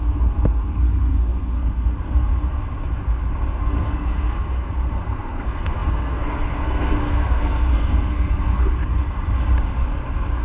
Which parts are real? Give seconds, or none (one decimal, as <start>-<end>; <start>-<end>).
2.3-3.6; 8.8-10.4